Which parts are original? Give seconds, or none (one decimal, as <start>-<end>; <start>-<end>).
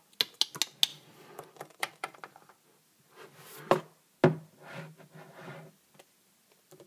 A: 0.0-0.9; 2.5-6.9